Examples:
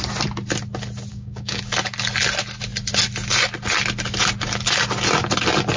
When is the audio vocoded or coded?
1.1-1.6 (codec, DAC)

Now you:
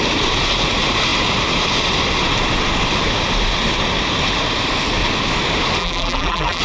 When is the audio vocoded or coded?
5.8-6.6 (vocoder, BigVGAN v2)

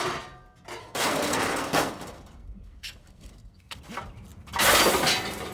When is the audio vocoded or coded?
0.8-3.8 (codec, SNAC)

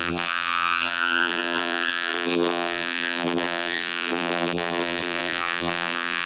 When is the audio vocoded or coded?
0.0-6.3 (vocoder, BigVGAN v2)

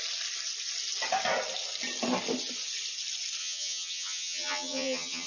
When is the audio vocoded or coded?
3.4-5.3 (vocoder, HiFi-GAN)

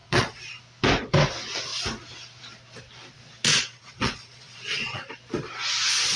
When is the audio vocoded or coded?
0.0-0.6 (vocoder, Vocos); 3.5-5.1

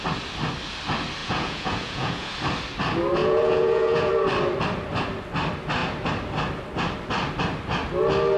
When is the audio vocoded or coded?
1.2-2.3 (vocoder, Vocos); 3.2-4.1